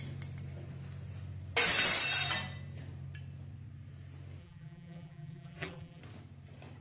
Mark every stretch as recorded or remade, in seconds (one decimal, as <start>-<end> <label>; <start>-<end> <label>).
0.0-4.4 recorded; 4.4-6.0 remade; 6.0-6.8 recorded